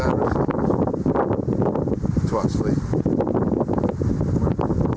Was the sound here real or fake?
real